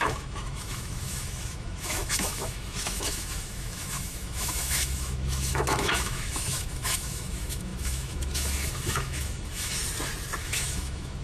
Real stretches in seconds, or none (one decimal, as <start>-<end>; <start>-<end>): 9.8-10.4